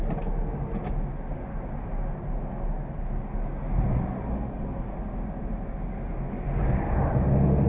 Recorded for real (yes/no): yes